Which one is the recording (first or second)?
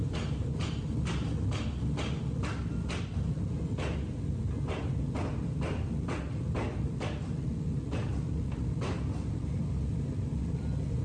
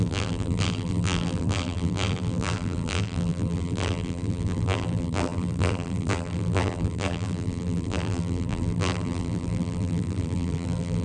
first